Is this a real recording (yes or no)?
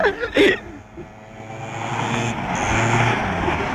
yes